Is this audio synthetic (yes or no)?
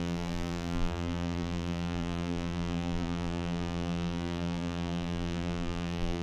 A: yes